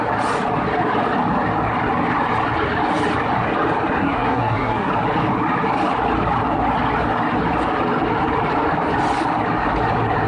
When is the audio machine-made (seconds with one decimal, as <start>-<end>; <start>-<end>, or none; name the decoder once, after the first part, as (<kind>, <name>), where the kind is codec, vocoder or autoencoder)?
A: 4.0-4.9 (codec, SNAC)